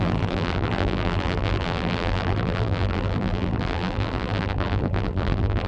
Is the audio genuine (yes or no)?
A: no